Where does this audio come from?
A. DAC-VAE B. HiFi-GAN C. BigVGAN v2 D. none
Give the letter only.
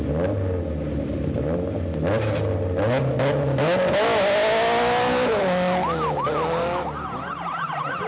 D